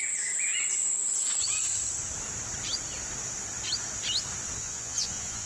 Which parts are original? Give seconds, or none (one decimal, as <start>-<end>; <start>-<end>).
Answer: 0.0-4.6